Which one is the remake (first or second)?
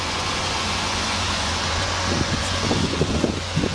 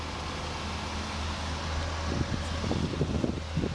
first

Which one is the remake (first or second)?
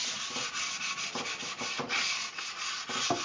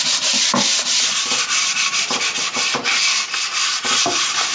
second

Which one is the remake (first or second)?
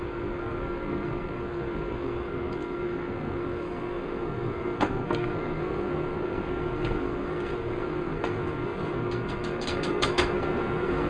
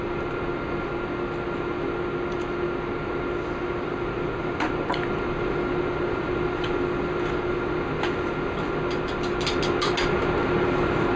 first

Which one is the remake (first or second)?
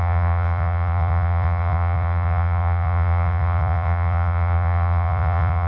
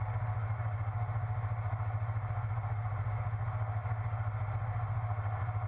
first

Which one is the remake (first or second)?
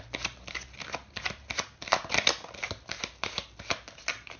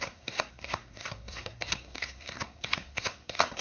second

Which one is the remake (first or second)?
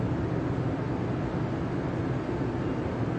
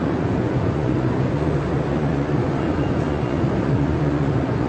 second